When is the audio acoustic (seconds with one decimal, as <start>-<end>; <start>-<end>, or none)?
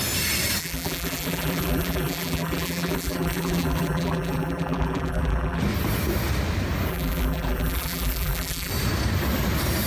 0.0-0.6; 5.6-6.9; 8.7-9.9